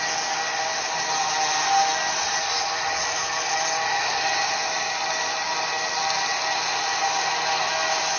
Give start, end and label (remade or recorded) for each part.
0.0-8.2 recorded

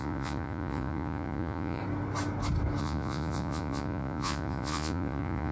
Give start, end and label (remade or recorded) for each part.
0.0-1.8 remade; 1.8-2.8 recorded; 2.8-5.5 remade

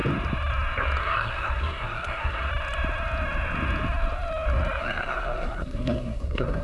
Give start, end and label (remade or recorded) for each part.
0.0-1.0 recorded; 1.0-2.5 remade; 2.5-4.8 recorded; 4.8-6.6 remade

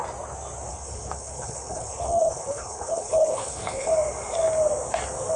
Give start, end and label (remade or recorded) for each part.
0.0-0.7 recorded; 0.7-3.9 remade; 3.9-5.4 recorded